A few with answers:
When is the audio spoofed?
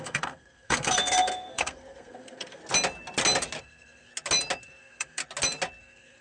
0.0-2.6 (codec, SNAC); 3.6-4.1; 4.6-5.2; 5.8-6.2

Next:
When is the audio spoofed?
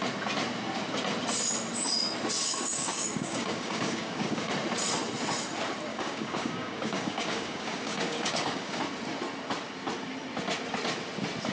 2.4-4.5 (codec, DAC); 5.9-8.8